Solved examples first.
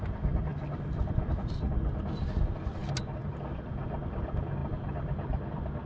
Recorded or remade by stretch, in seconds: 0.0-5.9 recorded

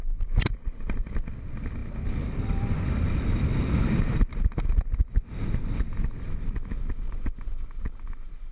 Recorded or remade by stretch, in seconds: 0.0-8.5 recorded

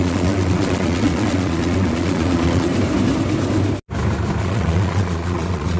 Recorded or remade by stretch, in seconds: 0.0-2.7 remade; 2.7-4.4 recorded; 4.4-5.8 remade

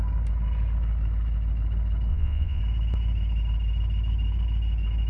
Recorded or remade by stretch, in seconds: 0.0-2.1 recorded; 2.1-2.6 remade; 2.6-5.1 recorded

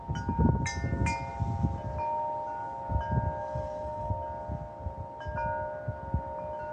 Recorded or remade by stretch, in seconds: 0.0-3.4 recorded; 3.4-4.1 remade; 4.1-6.7 recorded

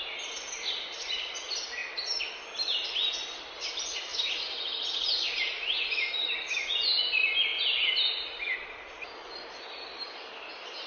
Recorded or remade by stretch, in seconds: 0.0-10.9 recorded

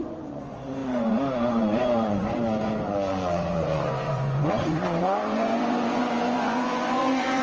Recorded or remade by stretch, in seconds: 0.0-7.4 remade